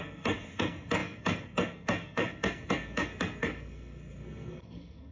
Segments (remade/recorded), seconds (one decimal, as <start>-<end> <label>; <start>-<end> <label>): 0.0-5.1 remade